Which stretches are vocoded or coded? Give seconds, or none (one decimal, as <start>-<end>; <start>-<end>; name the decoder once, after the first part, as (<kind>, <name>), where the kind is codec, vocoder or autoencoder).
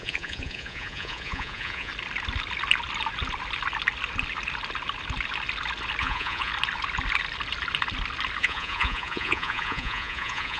0.0-1.9 (vocoder, Vocos); 6.0-6.5; 8.4-10.6